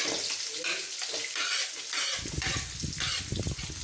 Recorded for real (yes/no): yes